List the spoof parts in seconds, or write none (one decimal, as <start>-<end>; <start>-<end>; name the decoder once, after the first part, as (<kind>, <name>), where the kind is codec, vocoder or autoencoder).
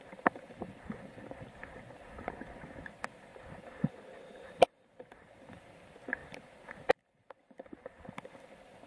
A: none